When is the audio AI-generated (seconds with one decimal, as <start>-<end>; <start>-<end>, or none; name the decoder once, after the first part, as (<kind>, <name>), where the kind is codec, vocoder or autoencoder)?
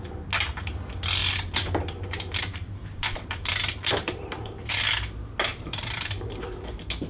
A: 1.2-4.7 (vocoder, BigVGAN v2); 5.5-6.5